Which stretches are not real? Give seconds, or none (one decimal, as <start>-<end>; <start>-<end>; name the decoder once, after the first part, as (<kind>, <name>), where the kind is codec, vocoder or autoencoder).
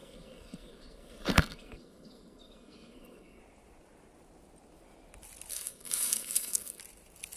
0.0-3.4 (codec, SNAC); 5.5-6.8